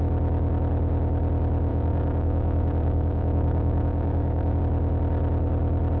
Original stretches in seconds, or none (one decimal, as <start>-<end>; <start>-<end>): 0.0-1.7; 4.6-6.0